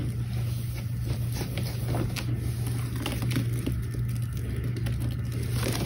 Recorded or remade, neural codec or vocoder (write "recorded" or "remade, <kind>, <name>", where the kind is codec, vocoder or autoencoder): recorded